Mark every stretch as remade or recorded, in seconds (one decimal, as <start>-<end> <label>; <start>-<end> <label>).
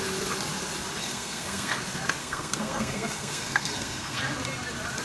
0.0-1.0 recorded; 1.0-1.8 remade; 1.8-2.2 recorded; 2.2-4.2 remade; 4.2-5.0 recorded